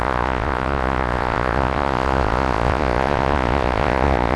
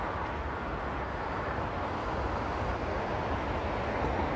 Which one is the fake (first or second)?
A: first